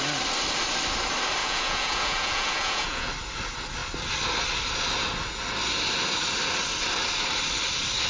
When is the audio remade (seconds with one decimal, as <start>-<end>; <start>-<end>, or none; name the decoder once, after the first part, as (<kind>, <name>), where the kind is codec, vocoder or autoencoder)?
1.4-3.1 (vocoder, Vocos)